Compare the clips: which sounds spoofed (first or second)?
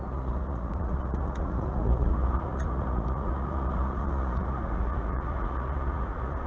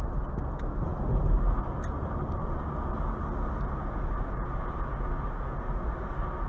first